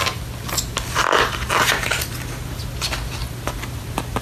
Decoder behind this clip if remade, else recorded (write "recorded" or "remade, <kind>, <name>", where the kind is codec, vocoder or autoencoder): recorded